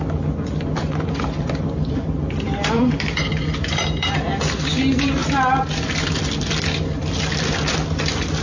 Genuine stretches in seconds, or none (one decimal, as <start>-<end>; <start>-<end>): 5.2-5.8

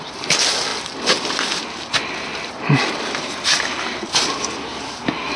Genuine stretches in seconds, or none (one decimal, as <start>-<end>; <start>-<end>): 0.7-2.4; 4.7-5.4

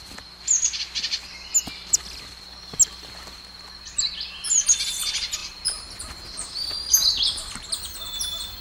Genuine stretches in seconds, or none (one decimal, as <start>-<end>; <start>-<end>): 0.0-8.6

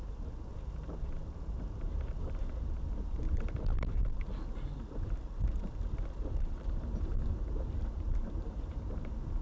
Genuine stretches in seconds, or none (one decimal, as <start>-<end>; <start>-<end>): 0.5-1.0

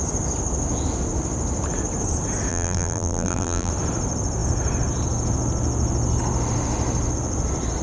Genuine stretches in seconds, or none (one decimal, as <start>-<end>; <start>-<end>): 0.0-2.5; 3.7-7.8

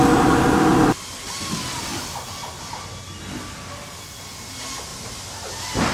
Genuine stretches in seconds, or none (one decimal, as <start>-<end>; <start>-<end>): 0.0-4.9

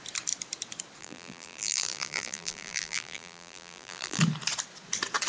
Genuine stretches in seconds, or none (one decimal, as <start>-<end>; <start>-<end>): 0.0-1.0; 4.2-5.3

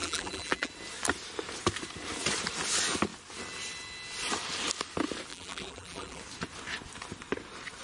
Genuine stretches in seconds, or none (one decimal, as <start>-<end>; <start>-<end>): 0.7-5.3; 6.2-7.8